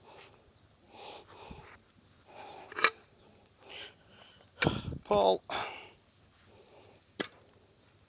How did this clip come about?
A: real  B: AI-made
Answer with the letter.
A